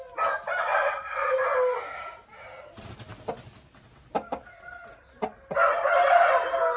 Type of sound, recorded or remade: recorded